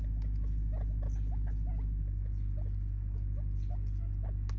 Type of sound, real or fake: real